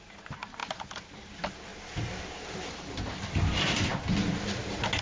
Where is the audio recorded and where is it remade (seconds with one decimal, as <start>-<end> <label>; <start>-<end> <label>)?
0.0-5.0 recorded